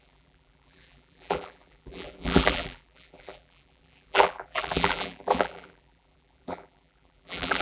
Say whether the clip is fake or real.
fake